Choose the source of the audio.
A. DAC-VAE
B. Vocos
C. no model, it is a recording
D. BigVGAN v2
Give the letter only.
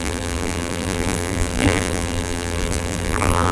D